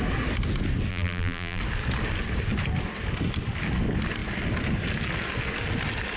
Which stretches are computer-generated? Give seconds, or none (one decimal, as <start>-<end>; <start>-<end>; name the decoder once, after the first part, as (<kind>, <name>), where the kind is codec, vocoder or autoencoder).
0.9-1.6 (vocoder, BigVGAN v2)